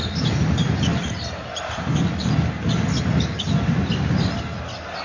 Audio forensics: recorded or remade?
recorded